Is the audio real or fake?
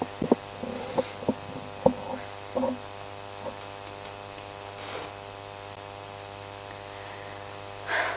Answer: real